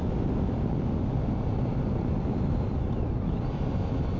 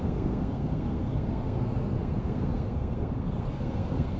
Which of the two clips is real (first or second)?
first